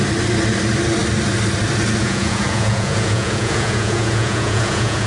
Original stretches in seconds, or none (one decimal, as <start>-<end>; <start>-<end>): 0.0-2.0